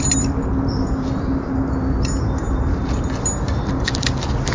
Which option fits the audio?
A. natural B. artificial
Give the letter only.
A